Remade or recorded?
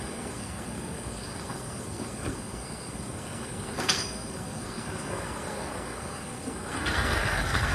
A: remade